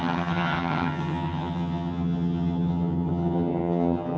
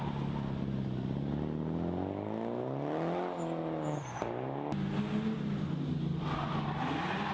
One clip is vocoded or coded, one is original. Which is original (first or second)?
second